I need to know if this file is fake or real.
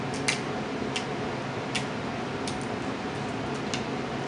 real